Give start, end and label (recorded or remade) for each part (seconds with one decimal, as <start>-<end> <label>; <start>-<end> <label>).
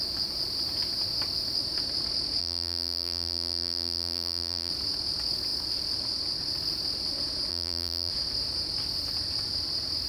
0.0-2.4 recorded; 2.4-4.7 remade; 4.7-7.5 recorded; 7.5-8.1 remade; 8.1-10.1 recorded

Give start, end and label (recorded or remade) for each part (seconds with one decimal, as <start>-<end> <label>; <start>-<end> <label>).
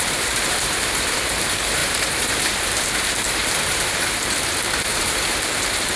0.0-6.0 remade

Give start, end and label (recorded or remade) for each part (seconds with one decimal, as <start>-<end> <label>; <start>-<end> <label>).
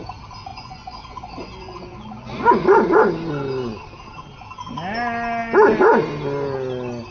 0.0-0.5 recorded; 0.5-3.3 remade; 3.3-7.1 recorded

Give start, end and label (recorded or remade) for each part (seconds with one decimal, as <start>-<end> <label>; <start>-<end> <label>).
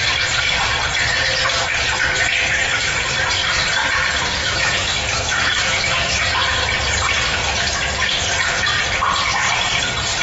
0.0-4.4 recorded; 4.4-6.2 remade; 6.2-10.2 recorded